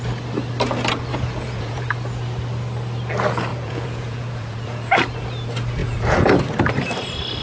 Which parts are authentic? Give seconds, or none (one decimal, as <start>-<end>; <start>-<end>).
0.0-1.1; 1.9-3.5; 4.9-5.8; 6.4-7.4